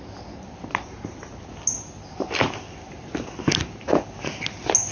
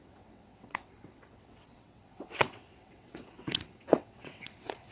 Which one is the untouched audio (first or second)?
first